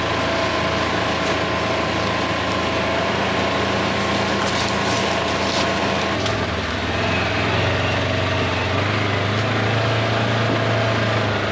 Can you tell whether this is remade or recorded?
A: recorded